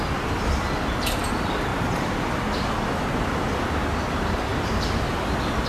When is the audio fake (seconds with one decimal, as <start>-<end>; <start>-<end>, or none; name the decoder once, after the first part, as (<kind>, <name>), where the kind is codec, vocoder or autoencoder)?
none

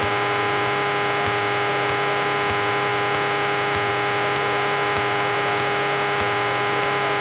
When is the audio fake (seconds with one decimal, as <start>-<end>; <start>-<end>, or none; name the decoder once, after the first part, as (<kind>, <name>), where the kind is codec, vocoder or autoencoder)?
none

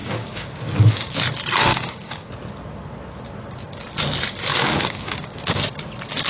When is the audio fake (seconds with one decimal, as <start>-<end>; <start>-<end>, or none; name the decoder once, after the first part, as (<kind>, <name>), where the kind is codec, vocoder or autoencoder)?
0.0-1.2 (codec, DAC); 1.7-2.3; 4.5-5.6

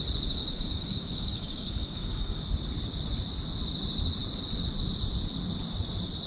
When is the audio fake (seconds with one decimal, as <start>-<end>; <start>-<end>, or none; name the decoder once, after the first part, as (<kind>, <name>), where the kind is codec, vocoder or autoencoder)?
0.4-2.4 (codec, DAC)

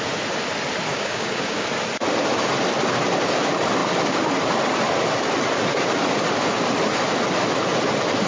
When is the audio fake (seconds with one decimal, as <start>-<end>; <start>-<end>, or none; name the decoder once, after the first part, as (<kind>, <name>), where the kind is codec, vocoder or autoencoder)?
0.9-1.7 (codec, DAC)

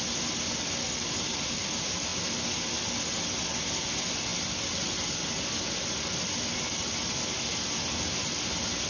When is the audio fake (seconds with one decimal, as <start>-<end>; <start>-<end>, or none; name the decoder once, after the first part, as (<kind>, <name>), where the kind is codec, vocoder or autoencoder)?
none

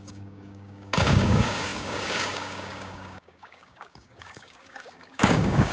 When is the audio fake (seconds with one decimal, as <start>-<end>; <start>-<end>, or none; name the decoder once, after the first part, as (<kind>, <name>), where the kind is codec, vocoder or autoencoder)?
0.0-5.7 (codec, DAC)